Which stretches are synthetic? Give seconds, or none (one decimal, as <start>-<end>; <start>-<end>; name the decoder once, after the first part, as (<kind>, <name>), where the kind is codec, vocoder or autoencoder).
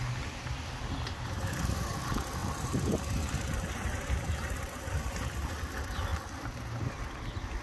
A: 0.8-1.4 (vocoder, BigVGAN v2); 2.4-5.5